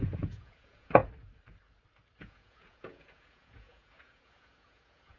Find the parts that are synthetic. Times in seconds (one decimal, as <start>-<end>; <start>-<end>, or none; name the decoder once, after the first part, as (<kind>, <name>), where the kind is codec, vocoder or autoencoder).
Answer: 0.0-1.0 (vocoder, Vocos); 2.2-5.2